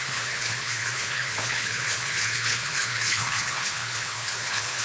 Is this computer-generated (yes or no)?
yes